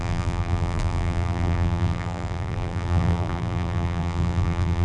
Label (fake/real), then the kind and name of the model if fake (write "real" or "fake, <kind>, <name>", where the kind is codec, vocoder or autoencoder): fake, vocoder, BigVGAN v2